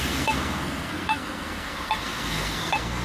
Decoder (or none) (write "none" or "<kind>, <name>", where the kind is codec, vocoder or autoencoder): codec, SNAC